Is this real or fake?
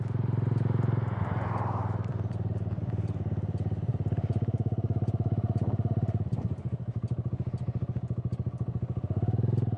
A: real